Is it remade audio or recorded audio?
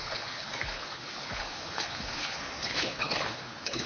remade